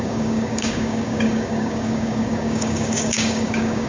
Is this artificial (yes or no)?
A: yes